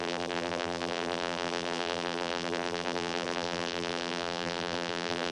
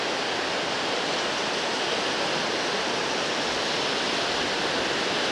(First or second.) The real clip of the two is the second